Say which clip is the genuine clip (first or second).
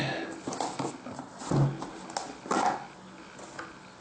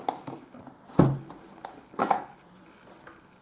first